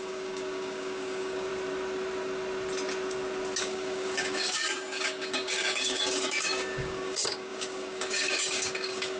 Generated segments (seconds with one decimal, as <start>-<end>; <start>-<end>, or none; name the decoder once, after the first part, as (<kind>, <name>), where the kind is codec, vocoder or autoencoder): 0.0-1.5 (codec, DAC); 3.6-9.2